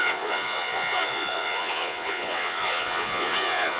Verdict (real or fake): fake